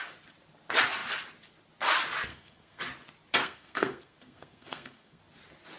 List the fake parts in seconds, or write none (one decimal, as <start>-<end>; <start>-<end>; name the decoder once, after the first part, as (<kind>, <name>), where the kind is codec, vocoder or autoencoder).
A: 2.3-2.8 (codec, SNAC); 3.4-5.2